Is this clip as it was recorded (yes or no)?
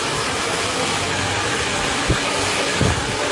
yes